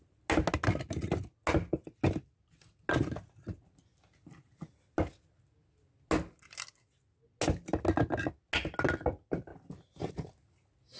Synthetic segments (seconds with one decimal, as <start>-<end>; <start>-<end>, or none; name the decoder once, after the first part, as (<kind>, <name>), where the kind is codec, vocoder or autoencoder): none